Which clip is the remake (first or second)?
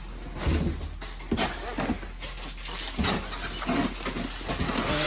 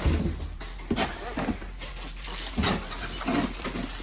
second